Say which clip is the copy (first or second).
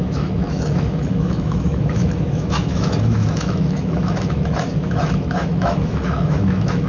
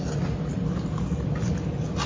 first